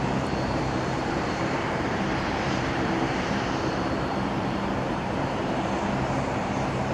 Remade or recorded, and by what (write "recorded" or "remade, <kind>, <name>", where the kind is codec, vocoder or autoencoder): remade, vocoder, BigVGAN v2